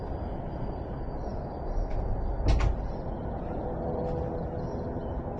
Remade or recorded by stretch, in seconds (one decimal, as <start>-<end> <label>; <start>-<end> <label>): 0.0-5.4 recorded